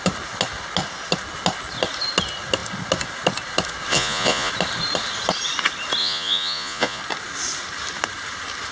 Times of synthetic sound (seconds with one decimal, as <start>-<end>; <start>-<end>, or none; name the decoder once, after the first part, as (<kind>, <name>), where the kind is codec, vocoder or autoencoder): 3.9-4.5 (vocoder, Vocos); 6.0-7.0